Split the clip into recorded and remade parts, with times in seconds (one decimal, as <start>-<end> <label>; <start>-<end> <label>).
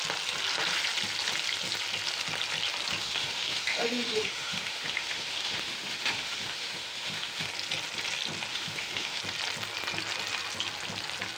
0.0-3.0 recorded; 3.0-7.5 remade; 7.5-8.5 recorded; 8.5-9.2 remade; 9.2-11.4 recorded